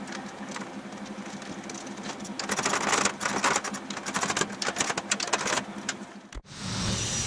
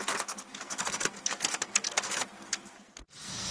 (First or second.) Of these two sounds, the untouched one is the first